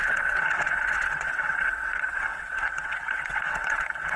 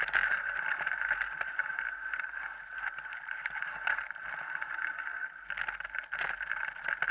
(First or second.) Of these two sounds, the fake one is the first